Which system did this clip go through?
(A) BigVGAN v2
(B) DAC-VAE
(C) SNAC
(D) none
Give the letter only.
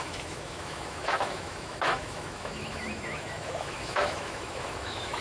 B